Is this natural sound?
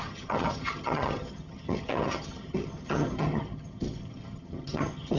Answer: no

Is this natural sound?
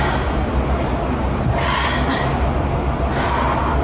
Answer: yes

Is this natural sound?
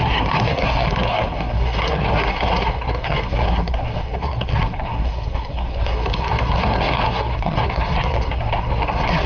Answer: no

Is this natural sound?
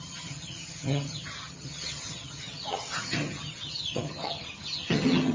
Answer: no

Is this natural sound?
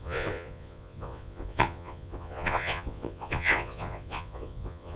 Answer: no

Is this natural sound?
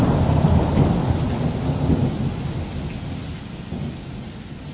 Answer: yes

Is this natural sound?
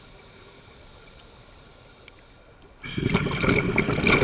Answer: yes